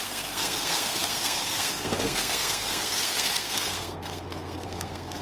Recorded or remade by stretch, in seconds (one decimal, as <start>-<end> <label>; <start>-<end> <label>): 0.0-5.2 remade